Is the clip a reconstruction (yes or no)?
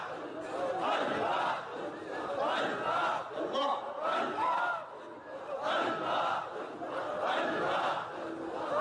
no